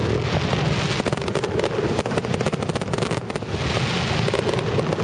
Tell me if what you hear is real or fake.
real